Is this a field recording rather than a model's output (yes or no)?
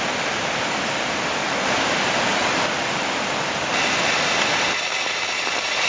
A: no